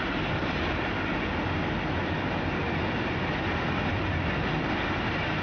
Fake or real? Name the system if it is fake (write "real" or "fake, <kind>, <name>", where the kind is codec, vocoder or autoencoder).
real